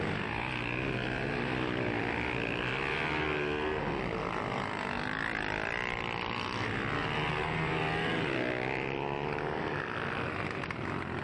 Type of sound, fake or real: real